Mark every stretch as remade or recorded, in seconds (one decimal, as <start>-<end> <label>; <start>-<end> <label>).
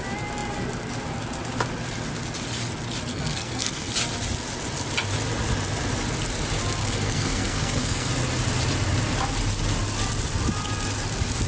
0.0-3.1 recorded; 3.1-3.9 remade; 3.9-6.8 recorded; 6.8-8.1 remade; 8.1-11.5 recorded